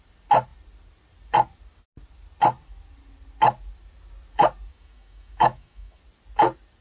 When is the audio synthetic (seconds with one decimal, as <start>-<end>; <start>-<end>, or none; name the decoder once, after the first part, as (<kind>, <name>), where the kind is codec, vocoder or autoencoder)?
4.7-6.0 (autoencoder, DAC-VAE)